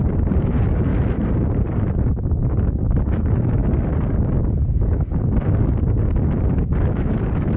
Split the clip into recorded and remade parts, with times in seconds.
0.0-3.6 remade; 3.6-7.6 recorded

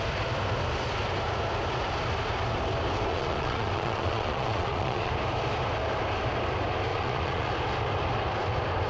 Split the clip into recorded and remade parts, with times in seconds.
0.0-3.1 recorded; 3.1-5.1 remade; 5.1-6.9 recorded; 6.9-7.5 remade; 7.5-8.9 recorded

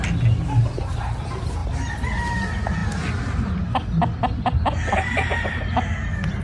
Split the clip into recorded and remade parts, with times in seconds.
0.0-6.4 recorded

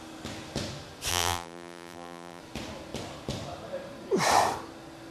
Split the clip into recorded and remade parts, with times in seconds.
0.0-1.1 recorded; 1.1-2.4 remade; 2.4-5.1 recorded